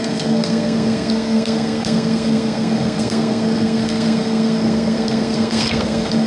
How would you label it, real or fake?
fake